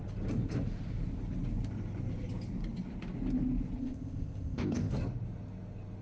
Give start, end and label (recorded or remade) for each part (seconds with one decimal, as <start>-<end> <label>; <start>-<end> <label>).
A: 0.0-3.8 recorded; 3.8-4.9 remade; 4.9-6.0 recorded